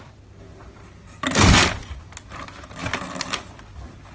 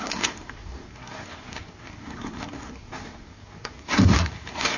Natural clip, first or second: first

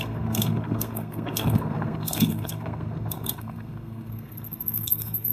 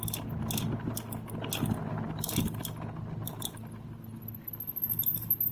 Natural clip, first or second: second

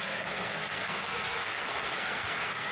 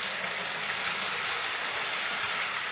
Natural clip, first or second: second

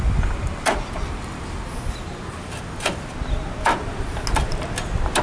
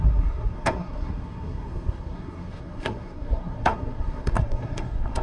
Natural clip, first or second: first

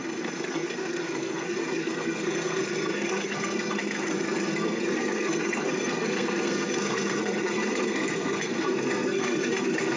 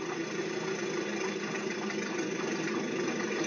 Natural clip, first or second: second